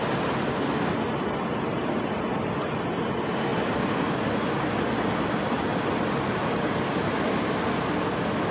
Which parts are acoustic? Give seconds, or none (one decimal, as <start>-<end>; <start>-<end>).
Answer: 0.0-8.5